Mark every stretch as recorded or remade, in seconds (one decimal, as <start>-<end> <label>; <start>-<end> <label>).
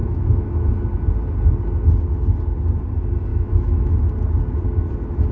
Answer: 0.0-0.7 remade; 0.7-3.3 recorded; 3.3-3.9 remade; 3.9-5.3 recorded